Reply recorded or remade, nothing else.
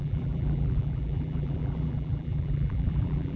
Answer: remade